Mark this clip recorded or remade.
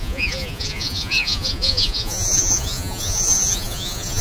remade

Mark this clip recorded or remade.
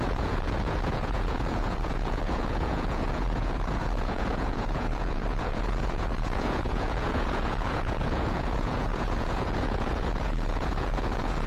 remade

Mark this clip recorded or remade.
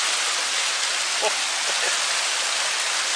recorded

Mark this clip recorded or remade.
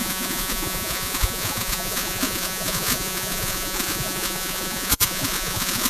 remade